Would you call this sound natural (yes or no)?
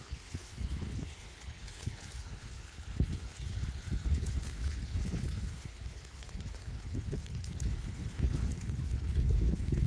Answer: no